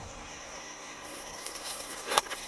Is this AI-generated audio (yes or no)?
yes